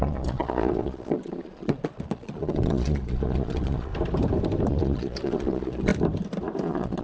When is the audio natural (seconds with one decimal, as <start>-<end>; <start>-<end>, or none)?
3.9-4.7; 5.9-6.6

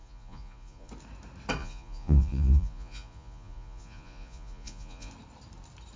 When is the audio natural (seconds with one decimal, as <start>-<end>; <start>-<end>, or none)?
0.9-1.6; 5.1-6.0

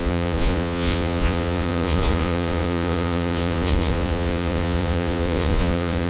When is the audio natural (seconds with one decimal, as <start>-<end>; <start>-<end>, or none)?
none